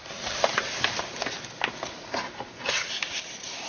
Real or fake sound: real